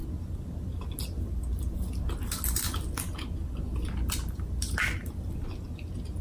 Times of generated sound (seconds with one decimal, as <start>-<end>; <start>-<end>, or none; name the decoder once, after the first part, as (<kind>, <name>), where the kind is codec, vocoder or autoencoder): none